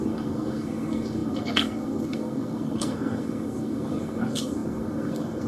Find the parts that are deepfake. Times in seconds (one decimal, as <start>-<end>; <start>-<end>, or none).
0.0-5.5